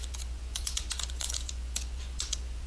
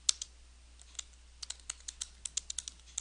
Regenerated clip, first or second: first